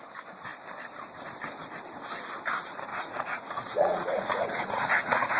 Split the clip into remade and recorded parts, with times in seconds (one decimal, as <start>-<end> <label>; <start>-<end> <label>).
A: 0.0-2.9 recorded; 2.9-5.4 remade